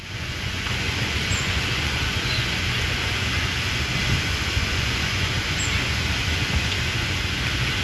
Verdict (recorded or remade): remade